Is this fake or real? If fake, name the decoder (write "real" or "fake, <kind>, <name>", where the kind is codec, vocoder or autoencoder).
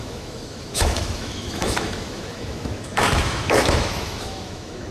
fake, autoencoder, DAC-VAE